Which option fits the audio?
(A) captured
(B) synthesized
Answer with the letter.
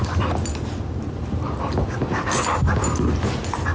A